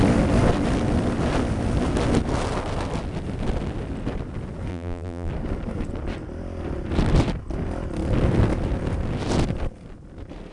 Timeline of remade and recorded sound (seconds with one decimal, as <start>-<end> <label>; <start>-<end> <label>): 0.0-4.7 recorded; 4.7-5.3 remade; 5.3-10.5 recorded